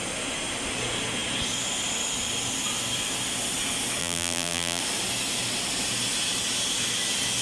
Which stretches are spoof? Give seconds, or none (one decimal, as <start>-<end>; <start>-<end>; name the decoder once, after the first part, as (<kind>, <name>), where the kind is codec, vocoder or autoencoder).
4.0-4.8 (vocoder, BigVGAN v2)